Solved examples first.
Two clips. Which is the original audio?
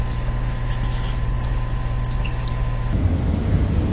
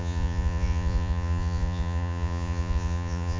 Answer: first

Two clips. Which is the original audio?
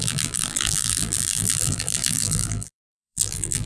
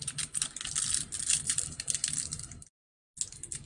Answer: second